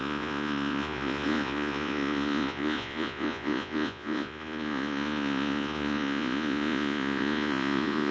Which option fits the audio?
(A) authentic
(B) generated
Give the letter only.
B